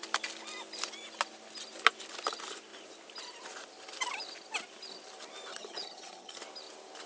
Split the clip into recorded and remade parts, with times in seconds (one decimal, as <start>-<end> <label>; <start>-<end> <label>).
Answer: 0.0-5.5 recorded; 5.5-6.4 remade; 6.4-7.1 recorded